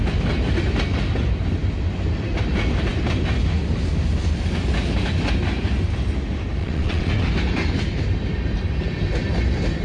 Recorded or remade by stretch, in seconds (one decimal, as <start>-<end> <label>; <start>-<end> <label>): 0.0-6.6 recorded; 6.6-7.1 remade; 7.1-9.8 recorded